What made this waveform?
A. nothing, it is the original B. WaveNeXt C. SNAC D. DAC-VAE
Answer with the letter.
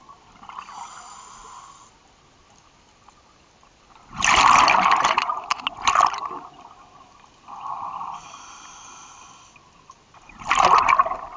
A